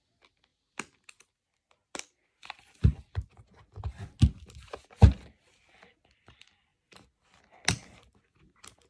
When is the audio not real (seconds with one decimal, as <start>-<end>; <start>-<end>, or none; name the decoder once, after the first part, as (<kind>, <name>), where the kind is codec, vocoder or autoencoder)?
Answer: none